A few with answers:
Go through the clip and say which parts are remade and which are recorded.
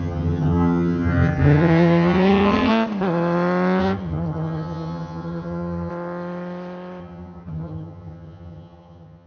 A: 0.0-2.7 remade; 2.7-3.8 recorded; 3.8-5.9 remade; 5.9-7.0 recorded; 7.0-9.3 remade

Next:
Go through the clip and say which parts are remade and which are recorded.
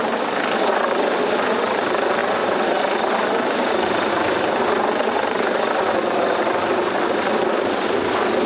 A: 0.0-8.5 recorded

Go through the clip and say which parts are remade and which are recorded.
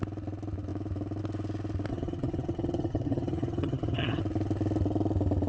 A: 0.0-1.9 recorded; 1.9-4.2 remade; 4.2-5.5 recorded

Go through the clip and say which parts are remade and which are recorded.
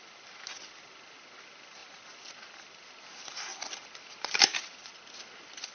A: 0.0-5.7 recorded